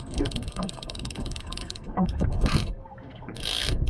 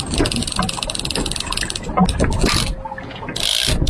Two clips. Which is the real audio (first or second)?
second